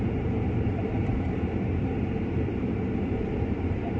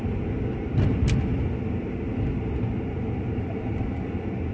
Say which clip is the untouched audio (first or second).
second